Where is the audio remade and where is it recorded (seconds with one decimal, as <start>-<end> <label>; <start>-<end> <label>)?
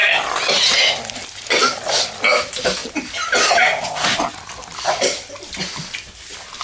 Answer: 0.0-6.6 recorded